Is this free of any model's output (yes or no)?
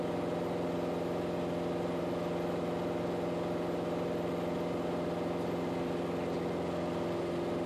yes